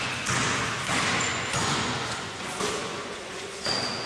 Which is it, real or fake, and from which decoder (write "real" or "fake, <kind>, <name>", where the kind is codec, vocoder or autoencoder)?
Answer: fake, vocoder, Vocos